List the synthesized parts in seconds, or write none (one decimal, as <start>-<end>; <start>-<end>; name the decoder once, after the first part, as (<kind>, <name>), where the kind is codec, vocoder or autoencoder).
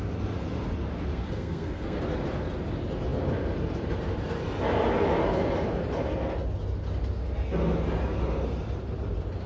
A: 1.1-2.0 (codec, SNAC)